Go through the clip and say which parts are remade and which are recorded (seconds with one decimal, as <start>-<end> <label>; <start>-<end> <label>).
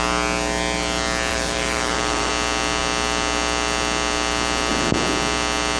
0.0-1.3 recorded; 1.3-2.3 remade; 2.3-5.8 recorded